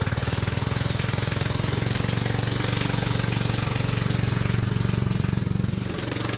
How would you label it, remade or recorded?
remade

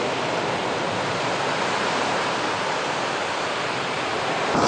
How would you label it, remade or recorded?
recorded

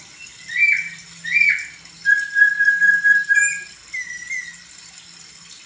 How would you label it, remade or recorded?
recorded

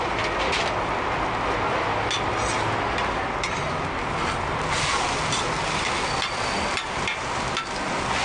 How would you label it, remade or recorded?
recorded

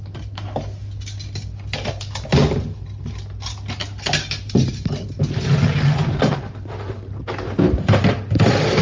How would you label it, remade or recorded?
recorded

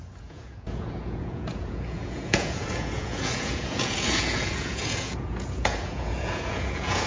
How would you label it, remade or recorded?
remade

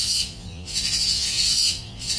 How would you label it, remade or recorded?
remade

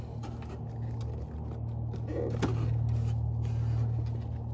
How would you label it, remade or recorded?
recorded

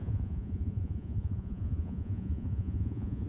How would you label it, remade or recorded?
remade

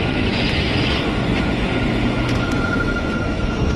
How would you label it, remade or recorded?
remade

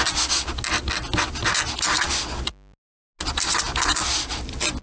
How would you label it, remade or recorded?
recorded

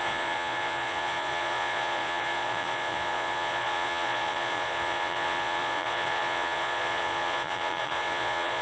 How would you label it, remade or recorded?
remade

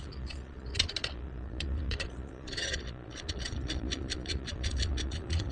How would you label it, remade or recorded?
remade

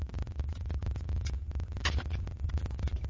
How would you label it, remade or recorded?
recorded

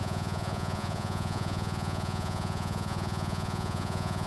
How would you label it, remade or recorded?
remade